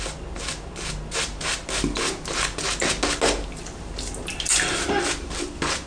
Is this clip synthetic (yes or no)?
no